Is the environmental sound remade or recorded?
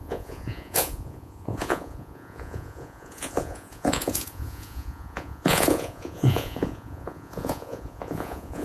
remade